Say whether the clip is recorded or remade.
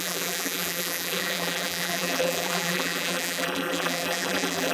remade